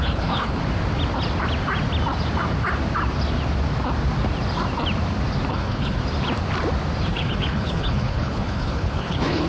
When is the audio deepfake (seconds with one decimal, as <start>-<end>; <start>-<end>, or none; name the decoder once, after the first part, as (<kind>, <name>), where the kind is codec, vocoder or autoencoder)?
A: 0.0-0.6 (codec, HILCodec); 5.5-6.0; 7.0-9.5